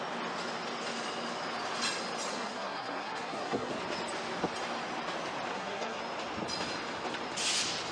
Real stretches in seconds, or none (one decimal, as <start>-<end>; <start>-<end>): 0.0-2.3; 3.7-5.5; 6.0-7.9